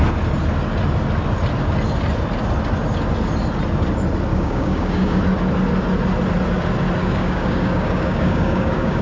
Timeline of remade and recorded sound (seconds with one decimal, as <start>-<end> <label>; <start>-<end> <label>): 0.0-4.3 recorded; 4.3-5.2 remade; 5.2-7.0 recorded; 7.0-9.0 remade